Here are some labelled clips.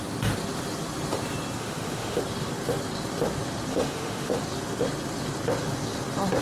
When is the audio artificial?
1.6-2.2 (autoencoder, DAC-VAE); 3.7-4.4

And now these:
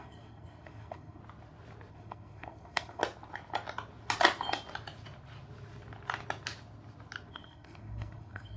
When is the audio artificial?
0.0-1.2 (codec, SNAC); 1.9-3.0; 7.3-8.6

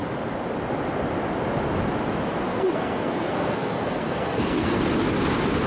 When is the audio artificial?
2.5-4.8 (codec, SNAC)